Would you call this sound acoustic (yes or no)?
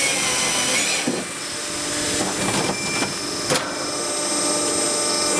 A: yes